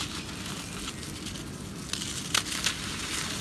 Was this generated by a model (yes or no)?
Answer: no